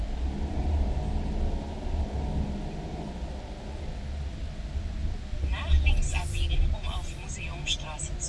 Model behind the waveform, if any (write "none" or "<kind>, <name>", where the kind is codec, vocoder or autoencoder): none